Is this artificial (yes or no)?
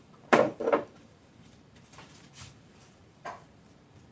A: yes